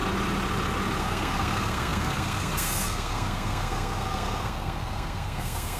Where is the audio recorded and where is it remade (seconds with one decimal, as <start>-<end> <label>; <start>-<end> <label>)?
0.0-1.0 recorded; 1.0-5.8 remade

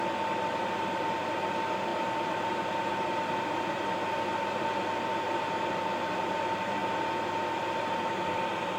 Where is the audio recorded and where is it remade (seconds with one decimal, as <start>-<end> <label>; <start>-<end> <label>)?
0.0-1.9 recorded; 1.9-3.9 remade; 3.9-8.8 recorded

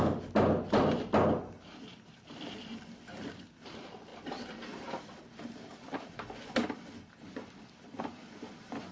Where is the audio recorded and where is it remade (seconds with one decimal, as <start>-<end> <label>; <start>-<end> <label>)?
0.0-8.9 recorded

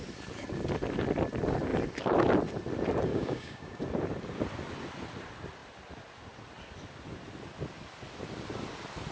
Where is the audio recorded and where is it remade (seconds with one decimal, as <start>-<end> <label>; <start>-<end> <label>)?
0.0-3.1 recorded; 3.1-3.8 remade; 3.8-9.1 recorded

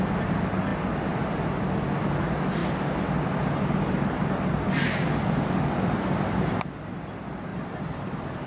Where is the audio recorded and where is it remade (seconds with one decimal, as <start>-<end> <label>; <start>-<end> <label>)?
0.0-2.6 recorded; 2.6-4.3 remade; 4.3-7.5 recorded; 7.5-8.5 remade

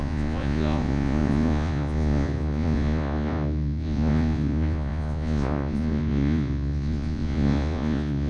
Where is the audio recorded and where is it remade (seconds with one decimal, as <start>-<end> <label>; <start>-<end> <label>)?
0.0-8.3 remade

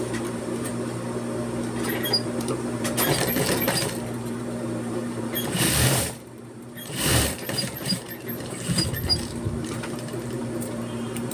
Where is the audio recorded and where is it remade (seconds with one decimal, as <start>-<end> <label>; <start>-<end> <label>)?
0.0-0.7 remade; 0.7-1.9 recorded; 1.9-11.3 remade